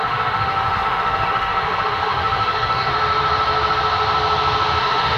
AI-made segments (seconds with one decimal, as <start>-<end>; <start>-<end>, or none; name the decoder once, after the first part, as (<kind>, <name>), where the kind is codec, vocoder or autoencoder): 0.0-2.9 (autoencoder, DAC-VAE); 4.8-5.2